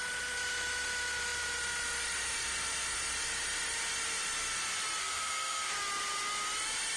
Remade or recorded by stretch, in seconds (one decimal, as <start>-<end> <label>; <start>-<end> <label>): 0.0-5.0 recorded; 5.0-5.7 remade; 5.7-7.0 recorded